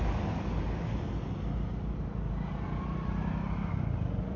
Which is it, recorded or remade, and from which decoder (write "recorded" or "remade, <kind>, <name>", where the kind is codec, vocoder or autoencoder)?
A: recorded